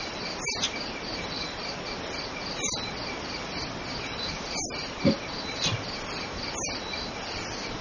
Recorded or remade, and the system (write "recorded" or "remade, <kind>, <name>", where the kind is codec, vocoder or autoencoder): recorded